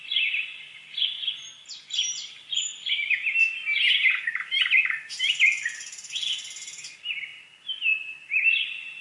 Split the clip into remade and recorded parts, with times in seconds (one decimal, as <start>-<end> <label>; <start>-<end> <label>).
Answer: 0.0-9.0 recorded